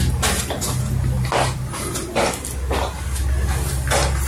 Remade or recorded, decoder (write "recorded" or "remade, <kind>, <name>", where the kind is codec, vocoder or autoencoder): recorded